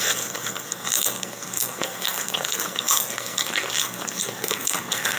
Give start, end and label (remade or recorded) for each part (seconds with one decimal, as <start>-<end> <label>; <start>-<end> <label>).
0.0-5.2 remade